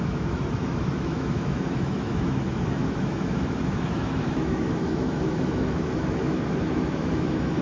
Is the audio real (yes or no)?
no